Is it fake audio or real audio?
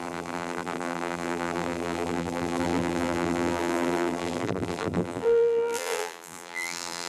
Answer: fake